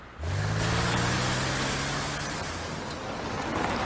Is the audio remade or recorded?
recorded